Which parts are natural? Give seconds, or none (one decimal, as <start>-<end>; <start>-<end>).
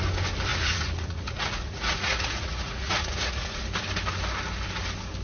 0.0-0.5; 3.6-5.2